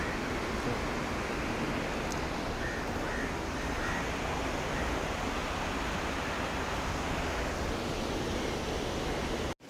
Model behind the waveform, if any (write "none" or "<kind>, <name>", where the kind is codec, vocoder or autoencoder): none